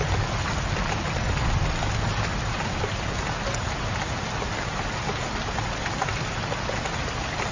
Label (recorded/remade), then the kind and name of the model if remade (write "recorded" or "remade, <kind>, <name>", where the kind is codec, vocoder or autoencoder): recorded